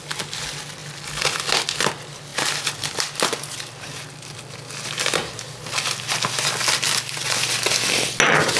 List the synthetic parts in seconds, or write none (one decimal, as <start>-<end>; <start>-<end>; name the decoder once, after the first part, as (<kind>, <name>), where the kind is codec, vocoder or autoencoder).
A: none